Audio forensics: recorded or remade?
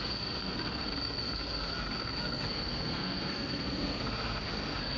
remade